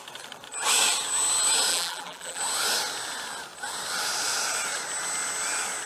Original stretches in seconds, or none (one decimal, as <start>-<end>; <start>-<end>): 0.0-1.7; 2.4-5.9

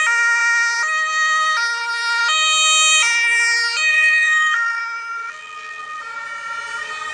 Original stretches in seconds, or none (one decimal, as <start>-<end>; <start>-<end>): 0.0-3.9; 4.8-5.2; 6.0-7.1

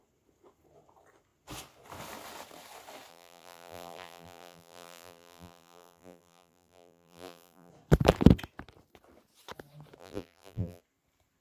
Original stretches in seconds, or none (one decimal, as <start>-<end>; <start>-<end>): 0.0-3.1; 7.7-10.0; 10.8-11.4

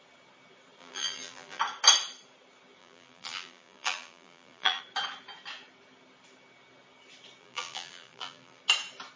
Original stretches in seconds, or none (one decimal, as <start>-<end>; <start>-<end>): 0.0-0.8; 1.6-2.8; 4.8-7.4; 8.6-9.2